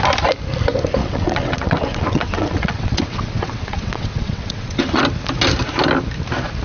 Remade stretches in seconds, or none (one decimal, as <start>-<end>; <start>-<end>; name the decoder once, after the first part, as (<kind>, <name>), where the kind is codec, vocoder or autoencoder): 1.0-5.0 (vocoder, WaveNeXt)